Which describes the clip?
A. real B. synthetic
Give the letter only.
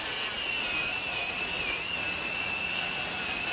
B